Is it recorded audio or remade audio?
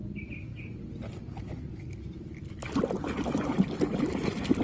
recorded